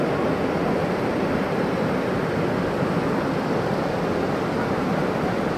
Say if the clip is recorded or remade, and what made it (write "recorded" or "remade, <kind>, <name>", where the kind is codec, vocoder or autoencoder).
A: recorded